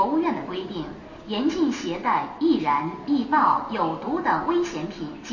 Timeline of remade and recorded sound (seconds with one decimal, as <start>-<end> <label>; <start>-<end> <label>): 0.0-5.3 recorded

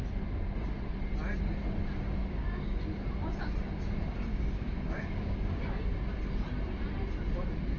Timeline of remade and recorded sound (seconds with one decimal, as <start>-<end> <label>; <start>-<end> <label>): 0.0-2.2 recorded; 2.2-2.8 remade; 2.8-4.3 recorded; 4.3-5.6 remade; 5.6-7.8 recorded

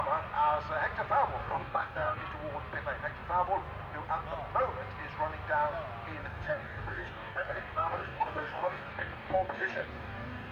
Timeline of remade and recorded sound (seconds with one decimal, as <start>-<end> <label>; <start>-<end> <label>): 0.0-1.4 recorded; 1.4-2.2 remade; 2.2-6.2 recorded; 6.2-10.5 remade

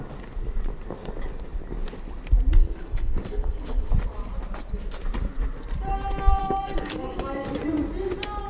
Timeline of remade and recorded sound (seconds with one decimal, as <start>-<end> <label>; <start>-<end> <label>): 0.0-2.6 recorded; 2.6-3.9 remade; 3.9-6.4 recorded; 6.4-7.5 remade; 7.5-8.5 recorded

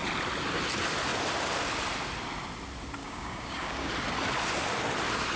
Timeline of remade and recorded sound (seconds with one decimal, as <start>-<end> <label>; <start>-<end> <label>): 0.0-3.0 recorded; 3.0-3.9 remade; 3.9-5.4 recorded